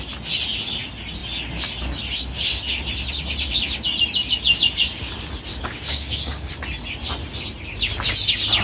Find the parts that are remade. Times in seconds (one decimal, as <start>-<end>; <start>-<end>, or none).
5.5-6.5